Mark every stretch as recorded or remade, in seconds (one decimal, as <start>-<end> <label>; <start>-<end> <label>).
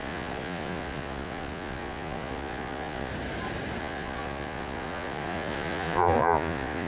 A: 0.0-3.1 remade; 3.1-3.8 recorded; 3.8-6.9 remade